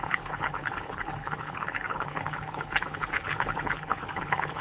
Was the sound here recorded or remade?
remade